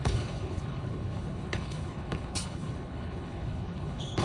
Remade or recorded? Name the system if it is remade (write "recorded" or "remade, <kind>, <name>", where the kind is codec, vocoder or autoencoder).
remade, codec, HILCodec